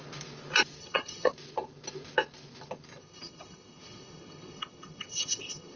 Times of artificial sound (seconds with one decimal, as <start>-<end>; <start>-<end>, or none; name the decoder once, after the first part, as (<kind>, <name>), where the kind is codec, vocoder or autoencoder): 0.8-1.3 (vocoder, HiFi-GAN); 3.0-5.8